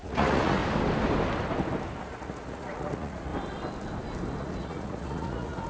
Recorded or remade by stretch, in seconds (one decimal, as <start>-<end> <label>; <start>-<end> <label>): 0.0-0.6 remade; 0.6-2.0 recorded; 2.0-3.3 remade; 3.3-4.4 recorded; 4.4-5.7 remade